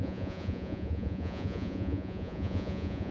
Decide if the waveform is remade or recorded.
remade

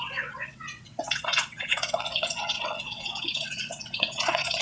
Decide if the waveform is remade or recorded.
remade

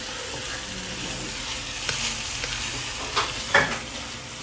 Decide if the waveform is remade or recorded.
recorded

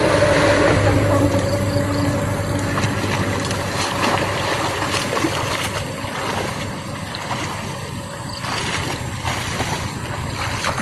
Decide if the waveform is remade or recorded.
recorded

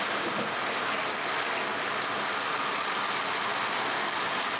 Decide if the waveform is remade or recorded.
recorded